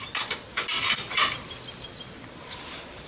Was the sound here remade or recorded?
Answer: recorded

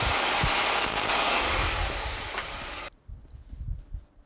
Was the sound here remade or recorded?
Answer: recorded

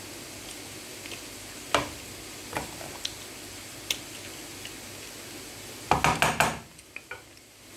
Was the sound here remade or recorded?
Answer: recorded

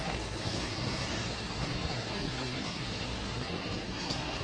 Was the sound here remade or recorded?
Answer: remade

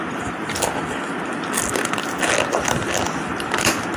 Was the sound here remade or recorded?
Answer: recorded